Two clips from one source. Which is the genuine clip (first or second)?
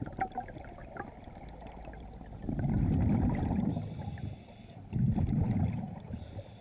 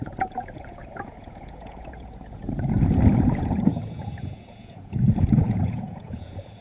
first